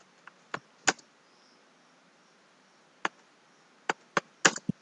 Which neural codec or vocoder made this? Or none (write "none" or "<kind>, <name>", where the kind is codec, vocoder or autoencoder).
none